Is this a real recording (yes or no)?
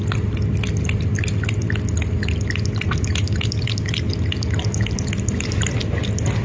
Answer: yes